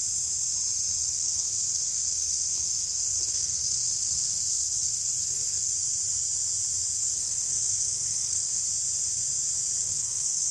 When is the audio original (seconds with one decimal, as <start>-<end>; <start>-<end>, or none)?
0.0-1.0; 5.7-7.0; 8.6-9.8